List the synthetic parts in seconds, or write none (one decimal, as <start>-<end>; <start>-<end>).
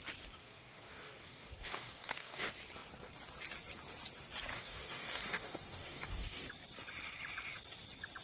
0.4-2.4; 4.5-6.5